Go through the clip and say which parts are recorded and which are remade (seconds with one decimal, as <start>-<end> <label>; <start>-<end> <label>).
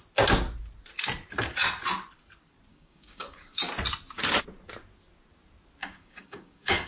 0.0-2.7 recorded; 2.7-3.7 remade; 3.7-5.8 recorded; 5.8-6.9 remade